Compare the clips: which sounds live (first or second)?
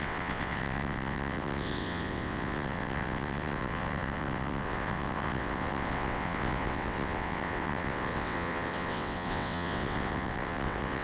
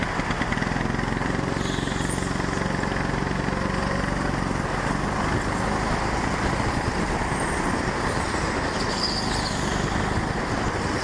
second